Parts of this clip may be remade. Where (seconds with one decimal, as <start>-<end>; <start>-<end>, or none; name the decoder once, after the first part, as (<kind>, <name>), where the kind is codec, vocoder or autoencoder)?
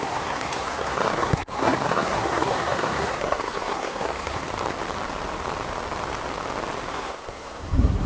0.0-4.4 (codec, SNAC); 6.9-8.1